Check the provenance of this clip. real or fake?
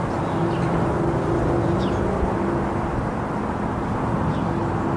real